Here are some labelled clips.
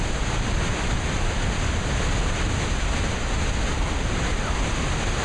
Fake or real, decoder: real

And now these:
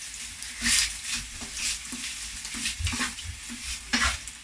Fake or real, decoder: real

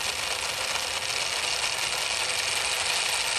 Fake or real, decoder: real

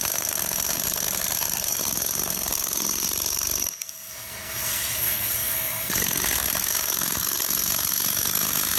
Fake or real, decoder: fake, codec, SNAC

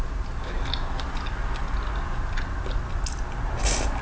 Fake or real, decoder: real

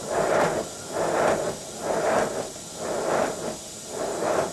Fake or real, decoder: real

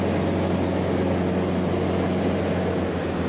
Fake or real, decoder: real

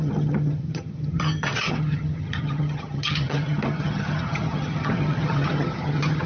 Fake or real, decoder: fake, vocoder, HiFi-GAN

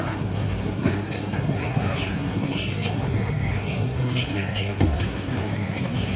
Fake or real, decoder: fake, codec, SNAC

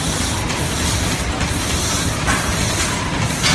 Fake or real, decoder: real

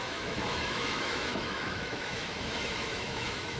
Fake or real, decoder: fake, autoencoder, DAC-VAE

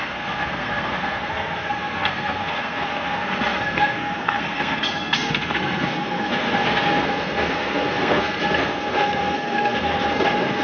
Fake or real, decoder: fake, codec, SNAC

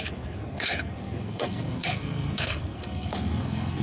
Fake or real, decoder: fake, codec, SNAC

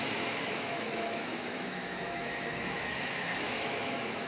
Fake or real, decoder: fake, autoencoder, DAC-VAE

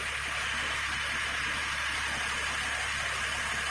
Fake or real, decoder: real